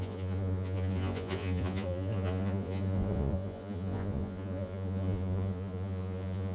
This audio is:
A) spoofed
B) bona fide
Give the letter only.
A